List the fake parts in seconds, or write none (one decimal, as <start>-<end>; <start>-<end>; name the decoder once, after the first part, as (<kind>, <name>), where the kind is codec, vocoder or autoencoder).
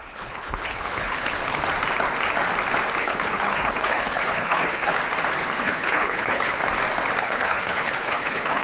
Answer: 0.0-1.4 (codec, HILCodec); 3.0-4.9; 5.6-6.6; 7.2-8.6